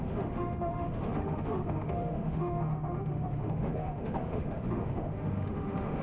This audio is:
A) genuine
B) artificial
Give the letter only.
B